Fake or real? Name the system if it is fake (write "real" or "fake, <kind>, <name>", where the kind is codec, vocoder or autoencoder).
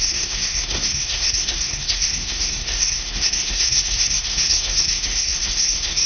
fake, codec, SNAC